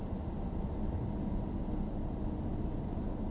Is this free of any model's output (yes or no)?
yes